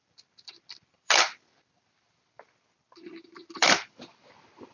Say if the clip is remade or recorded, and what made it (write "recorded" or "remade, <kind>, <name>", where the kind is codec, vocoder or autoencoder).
remade, vocoder, BigVGAN v2